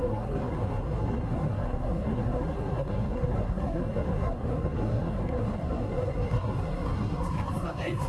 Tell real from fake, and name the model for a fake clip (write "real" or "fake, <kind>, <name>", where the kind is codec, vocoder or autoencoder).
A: fake, codec, SNAC